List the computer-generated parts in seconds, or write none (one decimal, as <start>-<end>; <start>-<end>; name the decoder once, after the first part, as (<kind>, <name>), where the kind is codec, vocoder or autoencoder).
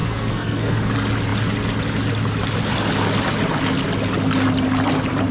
0.0-0.9 (codec, SNAC)